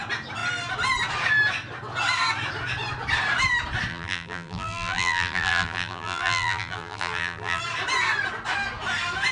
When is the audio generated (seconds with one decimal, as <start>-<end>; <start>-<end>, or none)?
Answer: 3.9-7.6